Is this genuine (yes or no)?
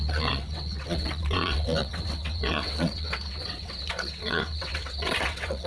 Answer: no